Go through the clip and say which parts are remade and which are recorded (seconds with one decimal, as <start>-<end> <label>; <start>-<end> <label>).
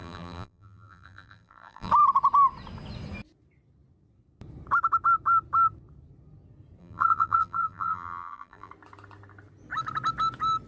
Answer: 0.0-1.9 remade; 1.9-6.8 recorded; 6.8-8.7 remade; 8.7-10.7 recorded